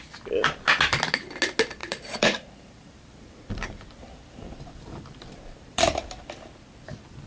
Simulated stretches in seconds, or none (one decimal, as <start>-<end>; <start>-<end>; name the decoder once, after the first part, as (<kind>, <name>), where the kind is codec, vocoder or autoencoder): 1.8-6.2 (vocoder, BigVGAN v2)